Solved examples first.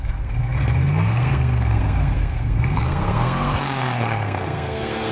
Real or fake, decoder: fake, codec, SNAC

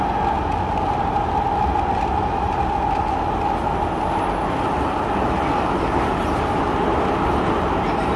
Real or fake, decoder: real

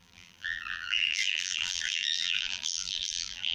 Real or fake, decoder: fake, vocoder, BigVGAN v2